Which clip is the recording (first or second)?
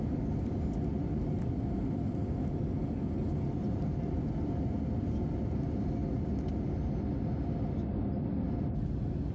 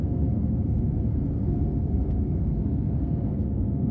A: first